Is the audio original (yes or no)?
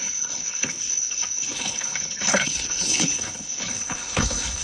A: no